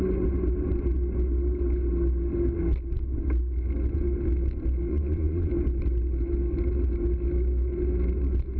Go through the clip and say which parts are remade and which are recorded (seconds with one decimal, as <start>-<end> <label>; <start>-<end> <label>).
0.0-4.9 recorded; 4.9-5.5 remade; 5.5-8.6 recorded